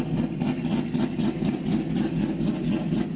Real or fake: real